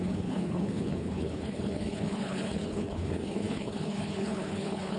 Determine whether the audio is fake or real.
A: fake